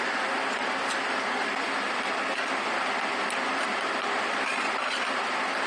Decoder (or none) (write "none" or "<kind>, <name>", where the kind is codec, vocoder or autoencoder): none